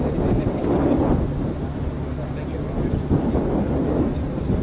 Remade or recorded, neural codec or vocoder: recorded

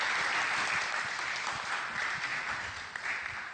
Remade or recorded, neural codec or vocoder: recorded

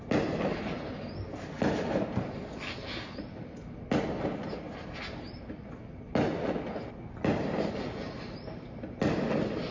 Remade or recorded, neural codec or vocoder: recorded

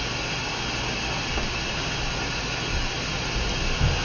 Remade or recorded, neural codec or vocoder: recorded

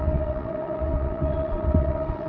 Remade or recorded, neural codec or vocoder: remade, vocoder, WaveNeXt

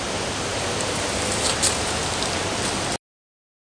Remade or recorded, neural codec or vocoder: recorded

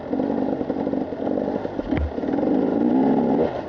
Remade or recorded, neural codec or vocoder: recorded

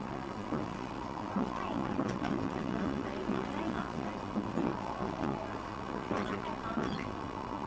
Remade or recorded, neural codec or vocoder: remade, vocoder, WaveNeXt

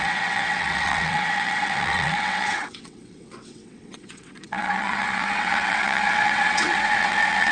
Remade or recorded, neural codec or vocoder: remade, vocoder, WaveNeXt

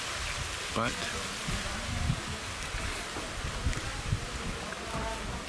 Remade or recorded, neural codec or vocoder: recorded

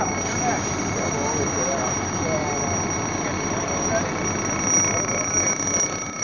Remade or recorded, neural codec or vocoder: recorded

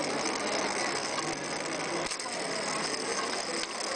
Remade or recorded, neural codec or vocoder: recorded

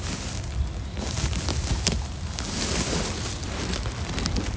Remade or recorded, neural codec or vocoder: recorded